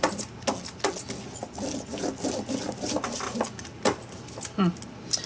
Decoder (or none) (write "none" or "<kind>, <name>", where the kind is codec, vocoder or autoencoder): none